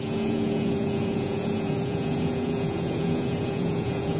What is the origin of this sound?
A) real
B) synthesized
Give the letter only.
B